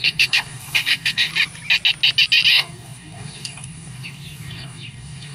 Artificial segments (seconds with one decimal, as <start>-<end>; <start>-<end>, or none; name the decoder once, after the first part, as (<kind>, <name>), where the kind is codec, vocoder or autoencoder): 0.0-1.3 (codec, DAC); 2.5-5.3